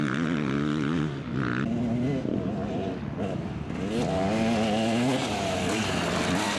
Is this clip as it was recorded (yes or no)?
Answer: yes